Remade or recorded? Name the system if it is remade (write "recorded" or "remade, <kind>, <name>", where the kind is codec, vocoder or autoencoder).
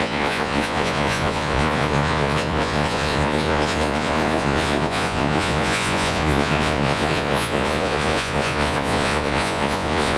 remade, vocoder, Vocos